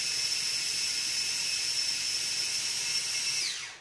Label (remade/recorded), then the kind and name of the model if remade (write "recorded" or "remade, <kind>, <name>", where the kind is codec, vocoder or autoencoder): recorded